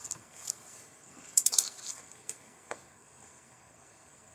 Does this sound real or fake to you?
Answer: fake